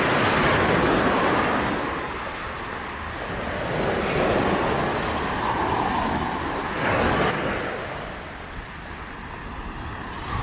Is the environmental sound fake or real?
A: real